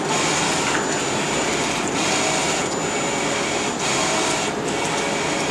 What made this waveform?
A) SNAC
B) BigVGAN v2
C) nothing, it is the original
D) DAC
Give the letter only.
C